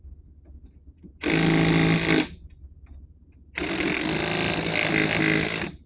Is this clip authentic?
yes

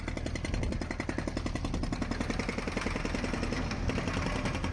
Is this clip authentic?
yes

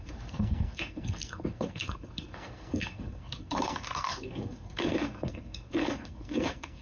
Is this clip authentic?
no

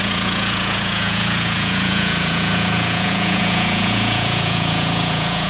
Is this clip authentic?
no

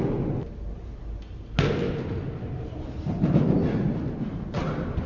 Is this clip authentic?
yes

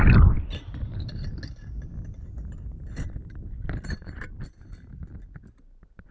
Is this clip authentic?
yes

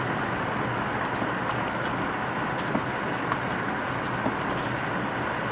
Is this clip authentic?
yes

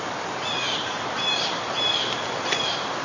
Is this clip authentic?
yes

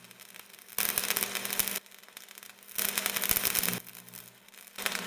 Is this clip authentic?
yes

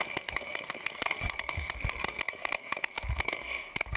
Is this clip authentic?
no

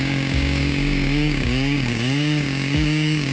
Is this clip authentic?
no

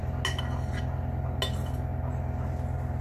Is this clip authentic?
yes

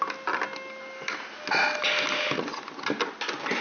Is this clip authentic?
yes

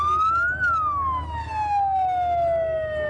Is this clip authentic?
yes